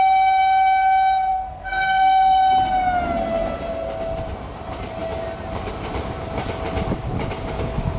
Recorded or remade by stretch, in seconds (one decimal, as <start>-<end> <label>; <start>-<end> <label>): 0.0-1.3 recorded; 1.3-2.4 remade; 2.4-8.0 recorded